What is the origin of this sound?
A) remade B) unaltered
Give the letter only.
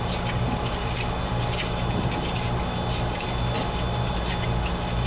B